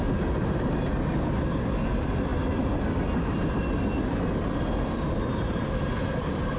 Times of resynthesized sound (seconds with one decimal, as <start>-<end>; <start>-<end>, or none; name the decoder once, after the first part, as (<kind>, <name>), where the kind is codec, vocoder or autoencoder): none